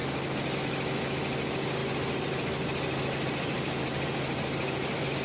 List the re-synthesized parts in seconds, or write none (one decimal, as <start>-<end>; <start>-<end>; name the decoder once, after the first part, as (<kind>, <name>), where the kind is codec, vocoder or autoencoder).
none